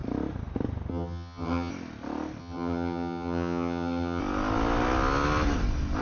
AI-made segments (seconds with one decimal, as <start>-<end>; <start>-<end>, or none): 0.9-1.7; 2.4-4.2